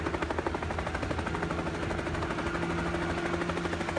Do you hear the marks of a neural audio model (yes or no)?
no